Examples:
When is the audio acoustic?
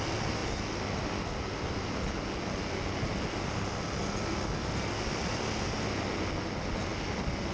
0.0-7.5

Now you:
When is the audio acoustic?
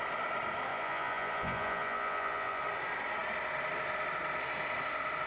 0.0-0.7; 2.6-5.3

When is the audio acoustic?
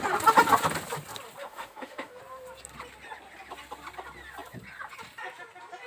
0.0-1.4; 2.2-5.9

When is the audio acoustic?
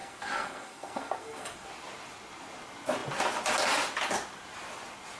1.7-5.2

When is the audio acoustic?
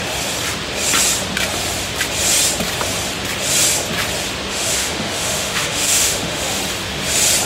0.0-4.5; 6.6-7.5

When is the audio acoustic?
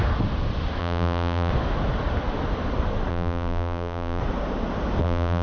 0.0-0.8; 1.5-3.1; 4.2-5.0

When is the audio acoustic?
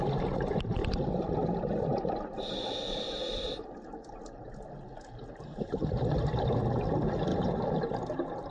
0.0-7.3